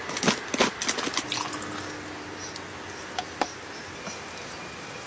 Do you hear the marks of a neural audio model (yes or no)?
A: no